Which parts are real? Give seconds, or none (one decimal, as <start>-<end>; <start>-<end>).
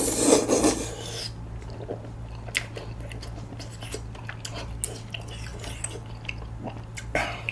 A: 0.0-7.5